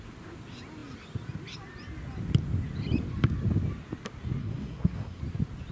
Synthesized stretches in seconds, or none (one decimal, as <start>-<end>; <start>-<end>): 4.4-5.2